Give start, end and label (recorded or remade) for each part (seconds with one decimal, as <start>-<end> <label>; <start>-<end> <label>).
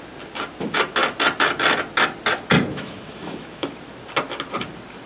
0.0-2.7 recorded; 2.7-3.7 remade; 3.7-5.1 recorded